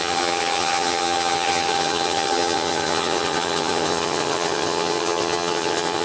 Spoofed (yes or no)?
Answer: yes